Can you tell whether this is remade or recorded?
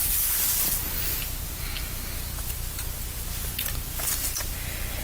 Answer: recorded